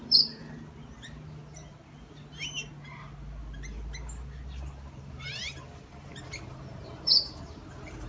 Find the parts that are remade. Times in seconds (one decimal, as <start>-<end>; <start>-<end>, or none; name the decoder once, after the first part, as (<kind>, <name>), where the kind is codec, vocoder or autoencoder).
0.0-0.4 (vocoder, BigVGAN v2); 5.0-8.1